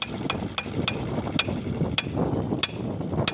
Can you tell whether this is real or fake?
real